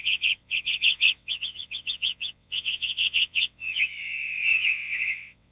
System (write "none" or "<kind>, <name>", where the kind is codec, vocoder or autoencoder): vocoder, WaveNeXt